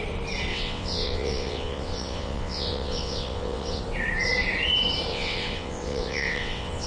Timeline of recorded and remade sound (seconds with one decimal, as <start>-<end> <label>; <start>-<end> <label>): 0.0-0.5 recorded; 0.5-3.8 remade; 3.8-5.1 recorded; 5.1-6.9 remade